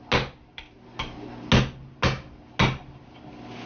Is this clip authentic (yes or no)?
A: yes